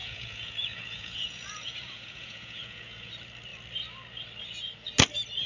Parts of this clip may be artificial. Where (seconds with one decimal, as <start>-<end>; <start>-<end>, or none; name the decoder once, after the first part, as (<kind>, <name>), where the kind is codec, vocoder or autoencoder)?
0.0-3.1 (vocoder, Vocos)